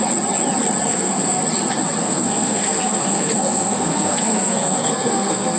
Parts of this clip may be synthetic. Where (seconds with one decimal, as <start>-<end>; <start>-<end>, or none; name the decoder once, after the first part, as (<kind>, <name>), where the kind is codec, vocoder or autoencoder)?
0.9-1.4 (codec, SNAC); 2.0-5.6